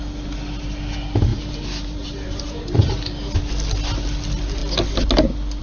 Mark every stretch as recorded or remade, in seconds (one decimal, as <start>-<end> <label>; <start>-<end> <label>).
0.0-1.3 recorded; 1.3-2.9 remade; 2.9-5.6 recorded